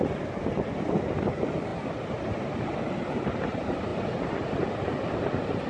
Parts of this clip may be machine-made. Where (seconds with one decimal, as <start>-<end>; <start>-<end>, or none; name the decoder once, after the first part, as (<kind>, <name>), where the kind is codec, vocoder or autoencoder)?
none